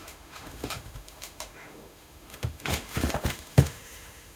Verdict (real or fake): fake